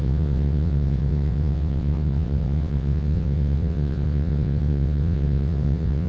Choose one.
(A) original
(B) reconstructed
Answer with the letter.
B